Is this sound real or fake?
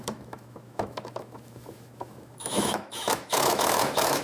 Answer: fake